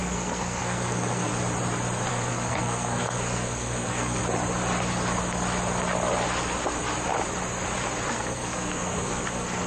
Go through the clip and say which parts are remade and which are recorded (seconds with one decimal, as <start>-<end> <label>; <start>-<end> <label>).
0.0-1.3 remade; 1.3-2.1 recorded; 2.1-4.2 remade; 4.2-8.1 recorded; 8.1-9.7 remade